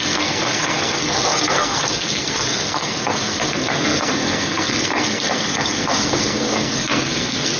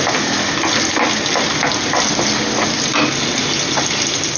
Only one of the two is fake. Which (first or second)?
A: first